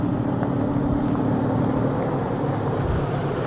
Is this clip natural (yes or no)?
yes